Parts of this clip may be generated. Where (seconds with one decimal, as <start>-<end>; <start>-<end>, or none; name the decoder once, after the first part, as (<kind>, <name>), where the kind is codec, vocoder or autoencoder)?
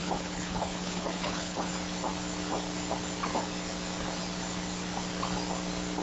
0.0-1.7 (codec, HILCodec)